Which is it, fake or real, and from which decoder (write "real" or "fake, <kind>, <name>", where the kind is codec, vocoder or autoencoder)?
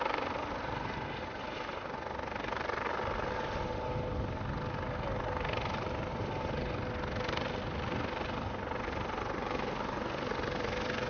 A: real